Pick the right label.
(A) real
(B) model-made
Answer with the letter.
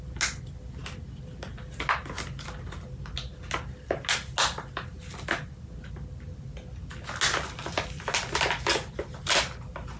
A